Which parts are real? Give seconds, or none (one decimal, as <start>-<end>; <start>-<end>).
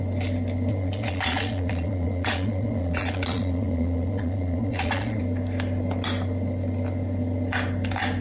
0.0-0.7; 5.2-8.2